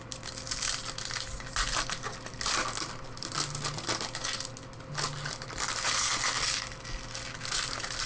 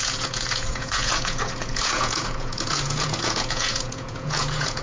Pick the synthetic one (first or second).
second